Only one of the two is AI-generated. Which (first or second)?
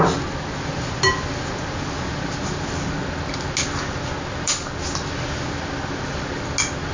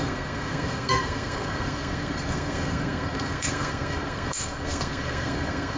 second